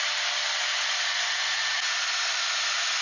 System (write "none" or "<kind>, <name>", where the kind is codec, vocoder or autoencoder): none